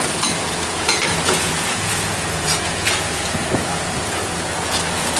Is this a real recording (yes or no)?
no